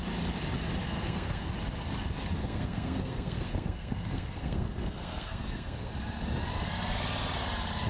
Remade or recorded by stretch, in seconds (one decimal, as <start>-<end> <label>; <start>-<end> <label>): 0.0-0.8 recorded; 0.8-1.5 remade; 1.5-2.4 recorded; 2.4-5.9 remade; 5.9-7.9 recorded